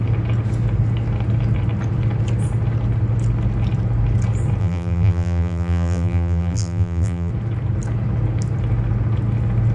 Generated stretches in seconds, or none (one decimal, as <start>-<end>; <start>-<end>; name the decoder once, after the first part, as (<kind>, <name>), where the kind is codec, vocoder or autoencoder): 4.6-7.3 (vocoder, BigVGAN v2)